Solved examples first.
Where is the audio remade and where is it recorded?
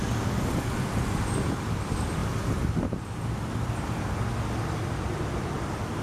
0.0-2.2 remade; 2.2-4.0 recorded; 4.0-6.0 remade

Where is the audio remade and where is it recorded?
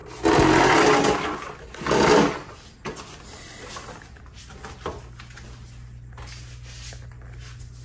0.0-7.8 recorded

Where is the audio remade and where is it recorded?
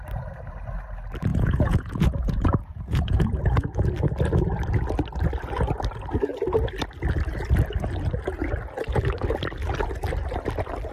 0.0-1.3 recorded; 1.3-3.9 remade; 3.9-10.9 recorded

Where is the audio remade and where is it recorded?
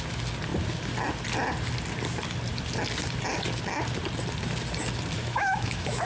0.0-5.2 recorded; 5.2-6.1 remade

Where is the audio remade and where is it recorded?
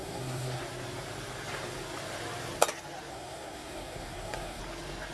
0.0-0.6 remade; 0.6-3.1 recorded; 3.1-4.6 remade; 4.6-5.1 recorded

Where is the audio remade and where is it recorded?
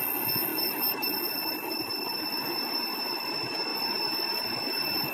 0.0-0.5 recorded; 0.5-3.3 remade; 3.3-3.7 recorded; 3.7-5.1 remade